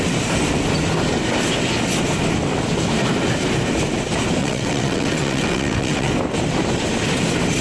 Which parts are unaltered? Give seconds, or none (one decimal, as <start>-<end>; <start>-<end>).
0.0-4.4; 6.1-7.6